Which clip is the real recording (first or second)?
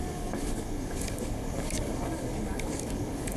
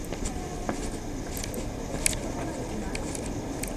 second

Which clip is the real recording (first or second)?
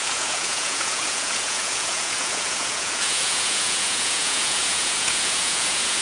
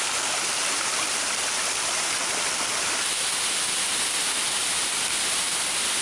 second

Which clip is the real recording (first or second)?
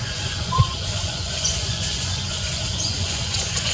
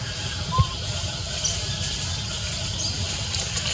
second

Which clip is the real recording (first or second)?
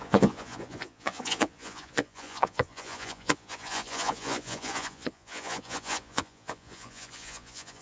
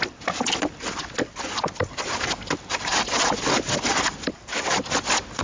second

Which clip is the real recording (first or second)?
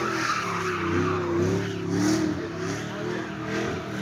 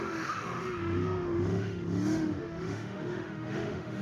first